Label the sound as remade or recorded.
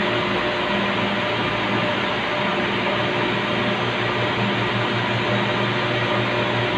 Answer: recorded